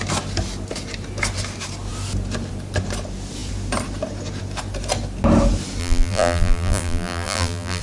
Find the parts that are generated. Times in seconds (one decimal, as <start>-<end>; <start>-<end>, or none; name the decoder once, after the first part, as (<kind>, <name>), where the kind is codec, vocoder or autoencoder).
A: 5.8-7.8 (vocoder, BigVGAN v2)